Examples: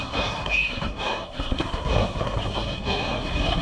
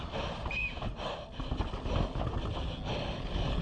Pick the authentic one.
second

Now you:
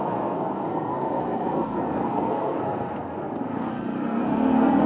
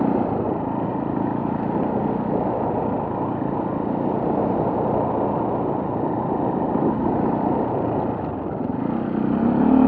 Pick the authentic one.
second